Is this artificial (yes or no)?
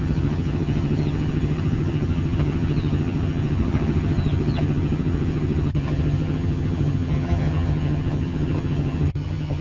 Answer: yes